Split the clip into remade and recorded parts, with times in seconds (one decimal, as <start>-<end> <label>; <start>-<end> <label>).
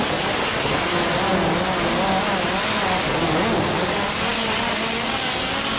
0.0-5.8 recorded